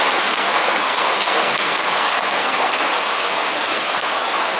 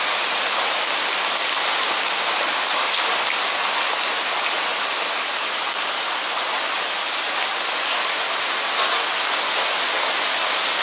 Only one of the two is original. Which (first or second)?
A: second